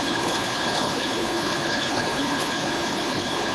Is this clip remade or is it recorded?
remade